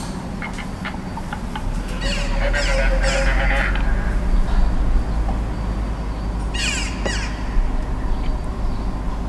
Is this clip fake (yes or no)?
no